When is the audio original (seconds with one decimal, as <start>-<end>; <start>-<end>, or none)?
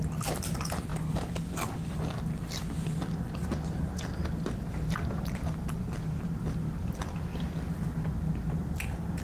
0.0-7.3; 8.1-9.2